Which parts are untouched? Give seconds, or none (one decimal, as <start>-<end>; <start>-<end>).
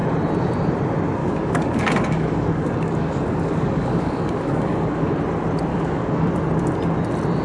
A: 0.0-1.2; 5.2-5.7; 6.3-7.4